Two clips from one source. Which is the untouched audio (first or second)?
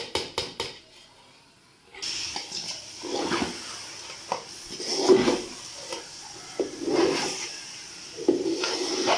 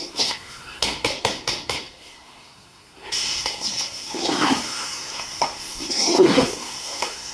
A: first